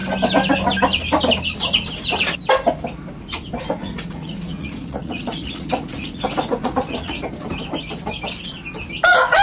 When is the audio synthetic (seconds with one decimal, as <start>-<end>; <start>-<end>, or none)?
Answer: 3.8-7.2